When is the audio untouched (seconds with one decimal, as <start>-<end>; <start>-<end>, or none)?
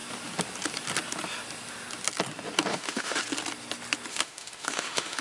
0.0-2.7; 3.2-4.1